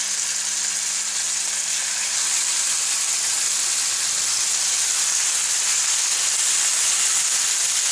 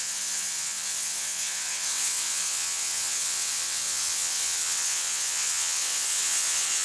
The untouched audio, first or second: first